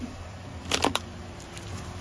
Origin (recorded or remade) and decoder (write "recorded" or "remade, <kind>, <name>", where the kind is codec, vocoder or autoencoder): remade, vocoder, BigVGAN v2